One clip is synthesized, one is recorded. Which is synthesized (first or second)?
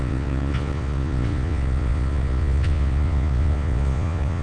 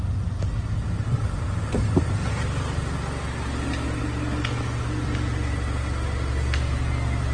first